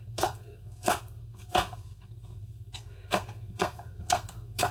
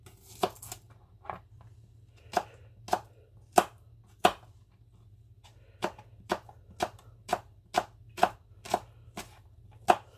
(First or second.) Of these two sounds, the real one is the second